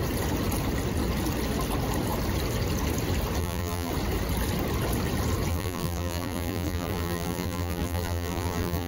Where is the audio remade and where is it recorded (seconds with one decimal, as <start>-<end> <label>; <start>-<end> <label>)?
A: 0.0-3.4 recorded; 3.4-3.9 remade; 3.9-5.5 recorded; 5.5-8.9 remade